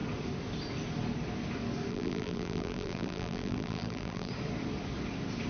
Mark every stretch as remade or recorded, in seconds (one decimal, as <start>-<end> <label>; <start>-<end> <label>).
0.0-1.9 recorded; 1.9-4.3 remade; 4.3-5.5 recorded